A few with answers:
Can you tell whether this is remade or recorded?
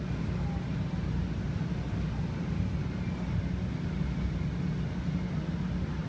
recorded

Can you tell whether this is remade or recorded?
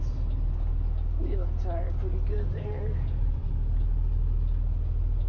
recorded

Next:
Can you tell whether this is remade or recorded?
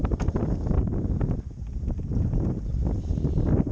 recorded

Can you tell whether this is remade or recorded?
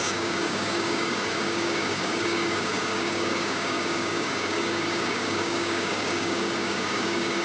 remade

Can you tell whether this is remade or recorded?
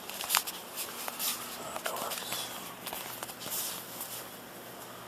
recorded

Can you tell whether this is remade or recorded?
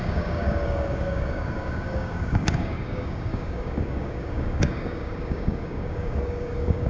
remade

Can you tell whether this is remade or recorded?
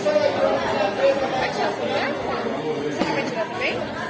recorded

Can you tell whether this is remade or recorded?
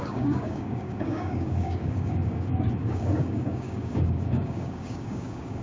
remade